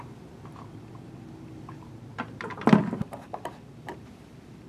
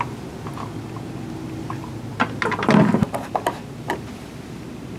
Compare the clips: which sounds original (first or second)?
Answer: second